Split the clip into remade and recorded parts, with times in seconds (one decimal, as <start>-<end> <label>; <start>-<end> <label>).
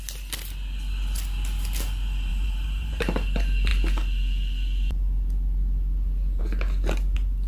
0.0-2.3 recorded; 2.3-3.0 remade; 3.0-7.5 recorded